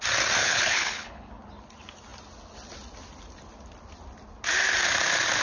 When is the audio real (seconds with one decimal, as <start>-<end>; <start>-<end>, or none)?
0.0-0.4; 1.3-5.4